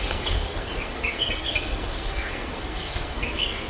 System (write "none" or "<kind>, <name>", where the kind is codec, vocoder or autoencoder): codec, SNAC